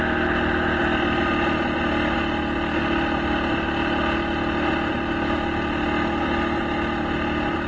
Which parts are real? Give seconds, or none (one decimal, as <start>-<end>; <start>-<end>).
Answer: 0.0-7.7